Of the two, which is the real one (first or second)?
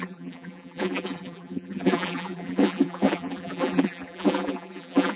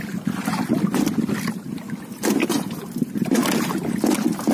second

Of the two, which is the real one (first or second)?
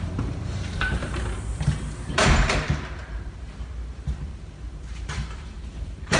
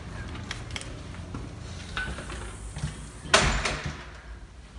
second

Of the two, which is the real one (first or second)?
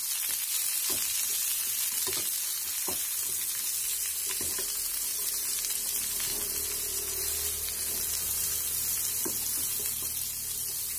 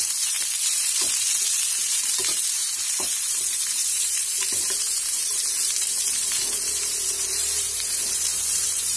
first